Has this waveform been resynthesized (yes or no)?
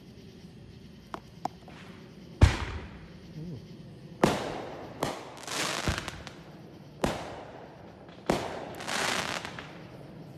no